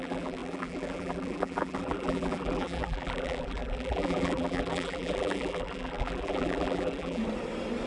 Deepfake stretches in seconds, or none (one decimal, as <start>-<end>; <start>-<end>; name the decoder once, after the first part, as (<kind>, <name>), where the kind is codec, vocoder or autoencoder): 0.0-7.2 (vocoder, BigVGAN v2)